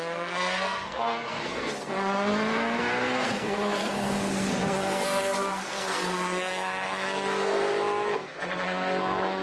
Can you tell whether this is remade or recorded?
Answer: remade